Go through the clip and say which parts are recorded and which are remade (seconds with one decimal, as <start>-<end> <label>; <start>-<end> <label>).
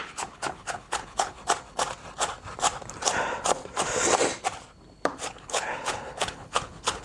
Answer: 0.0-1.4 remade; 1.4-5.3 recorded; 5.3-7.0 remade